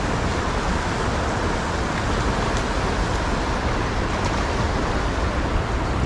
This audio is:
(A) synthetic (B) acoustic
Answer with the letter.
B